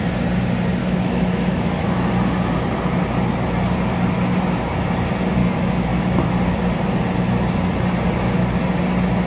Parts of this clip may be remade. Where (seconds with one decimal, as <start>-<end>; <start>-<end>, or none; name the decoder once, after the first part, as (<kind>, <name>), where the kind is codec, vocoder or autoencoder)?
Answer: 0.8-2.1 (autoencoder, DAC-VAE); 5.4-6.3